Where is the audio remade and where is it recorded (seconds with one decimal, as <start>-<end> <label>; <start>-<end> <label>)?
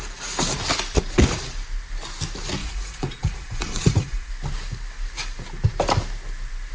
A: 0.0-2.6 recorded; 2.6-4.3 remade; 4.3-6.7 recorded